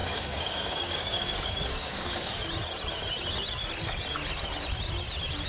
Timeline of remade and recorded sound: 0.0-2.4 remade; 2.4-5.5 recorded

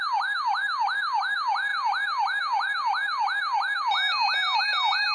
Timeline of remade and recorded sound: 0.0-5.1 recorded

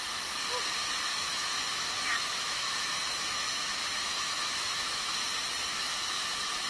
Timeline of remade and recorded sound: 0.0-1.1 recorded; 1.1-5.1 remade; 5.1-5.7 recorded; 5.7-6.7 remade